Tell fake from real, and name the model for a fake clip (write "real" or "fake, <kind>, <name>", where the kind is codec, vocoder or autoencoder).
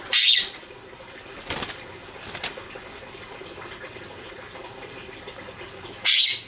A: real